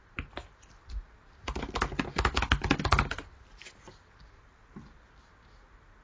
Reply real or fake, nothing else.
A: real